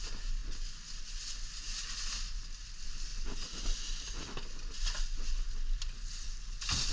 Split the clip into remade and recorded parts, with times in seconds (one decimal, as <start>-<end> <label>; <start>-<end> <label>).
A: 0.0-6.9 recorded